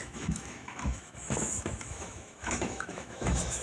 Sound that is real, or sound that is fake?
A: fake